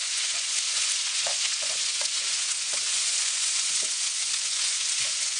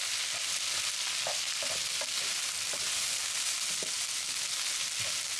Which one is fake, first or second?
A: first